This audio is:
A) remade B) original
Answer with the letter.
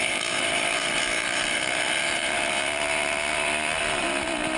A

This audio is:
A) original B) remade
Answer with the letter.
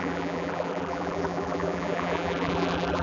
B